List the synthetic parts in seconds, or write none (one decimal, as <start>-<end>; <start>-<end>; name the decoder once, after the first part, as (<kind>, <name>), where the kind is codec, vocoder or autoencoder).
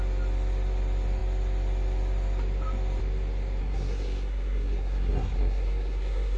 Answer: 3.6-6.4 (codec, SNAC)